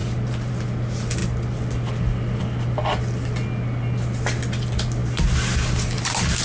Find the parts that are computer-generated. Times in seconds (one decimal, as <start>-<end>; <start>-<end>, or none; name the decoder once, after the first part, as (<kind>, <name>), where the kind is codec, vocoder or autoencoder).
none